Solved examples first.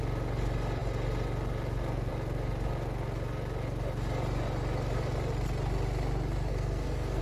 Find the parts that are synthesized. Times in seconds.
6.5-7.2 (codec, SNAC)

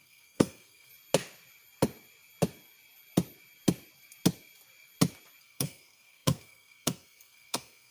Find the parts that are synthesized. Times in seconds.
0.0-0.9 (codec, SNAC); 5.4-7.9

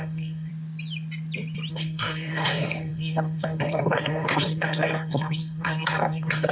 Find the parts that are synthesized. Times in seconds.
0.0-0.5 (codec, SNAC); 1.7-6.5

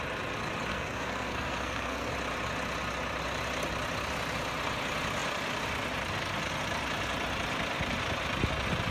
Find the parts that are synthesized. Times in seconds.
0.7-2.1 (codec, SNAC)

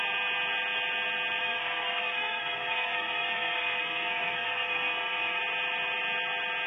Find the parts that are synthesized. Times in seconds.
1.4-5.4 (codec, SNAC)